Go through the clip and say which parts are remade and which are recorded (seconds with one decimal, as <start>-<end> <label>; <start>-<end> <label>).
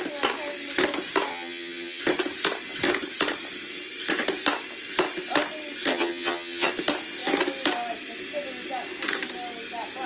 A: 0.0-1.3 recorded; 1.3-2.0 remade; 2.0-5.9 recorded; 5.9-6.7 remade; 6.7-10.1 recorded